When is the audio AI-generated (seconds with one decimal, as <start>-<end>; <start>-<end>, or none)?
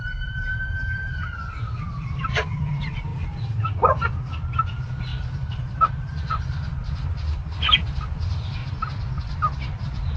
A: 0.0-8.6; 9.2-10.2